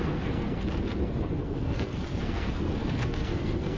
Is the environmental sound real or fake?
fake